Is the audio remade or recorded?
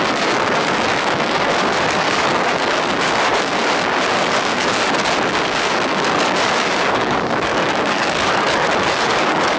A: remade